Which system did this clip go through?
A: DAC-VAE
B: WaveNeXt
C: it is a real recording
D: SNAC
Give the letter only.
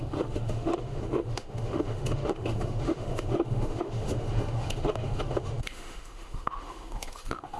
A